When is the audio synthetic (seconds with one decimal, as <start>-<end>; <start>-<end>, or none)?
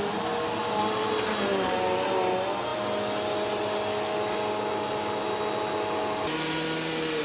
none